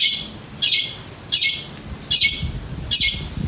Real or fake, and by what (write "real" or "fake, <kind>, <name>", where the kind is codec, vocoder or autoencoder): real